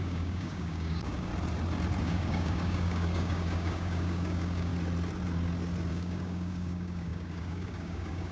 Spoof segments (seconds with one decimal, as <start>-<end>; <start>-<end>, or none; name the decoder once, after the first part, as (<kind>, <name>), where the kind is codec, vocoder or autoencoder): 0.0-1.3 (codec, DAC); 2.0-4.7; 5.9-8.3

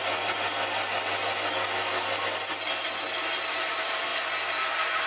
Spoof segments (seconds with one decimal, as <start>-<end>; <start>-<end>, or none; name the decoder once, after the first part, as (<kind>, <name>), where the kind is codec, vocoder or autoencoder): none